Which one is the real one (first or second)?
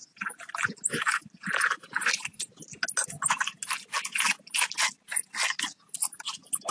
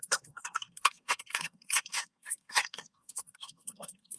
first